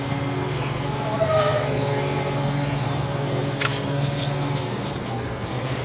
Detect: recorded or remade remade